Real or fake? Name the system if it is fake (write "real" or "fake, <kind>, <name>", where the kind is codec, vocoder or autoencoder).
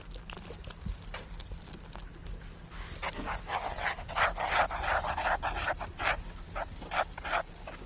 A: real